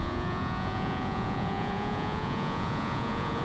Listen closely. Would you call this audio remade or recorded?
remade